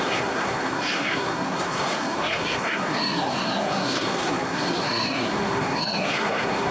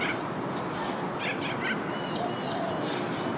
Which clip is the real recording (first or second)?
second